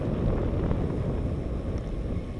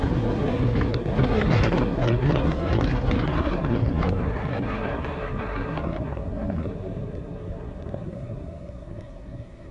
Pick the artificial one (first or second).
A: second